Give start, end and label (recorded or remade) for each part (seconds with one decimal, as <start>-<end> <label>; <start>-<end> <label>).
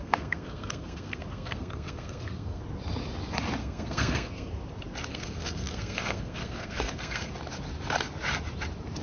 0.0-2.6 remade; 2.6-3.6 recorded; 3.6-4.5 remade; 4.5-5.1 recorded; 5.1-7.3 remade; 7.3-9.0 recorded